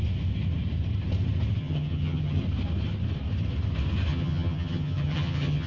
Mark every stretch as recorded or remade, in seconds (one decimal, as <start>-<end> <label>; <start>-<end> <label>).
0.0-1.6 recorded; 1.6-2.4 remade; 2.4-4.1 recorded; 4.1-5.7 remade